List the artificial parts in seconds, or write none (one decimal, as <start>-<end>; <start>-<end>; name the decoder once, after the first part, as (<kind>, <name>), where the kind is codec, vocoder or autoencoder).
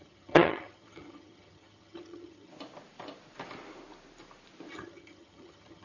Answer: 0.0-2.5 (vocoder, HiFi-GAN); 4.7-5.8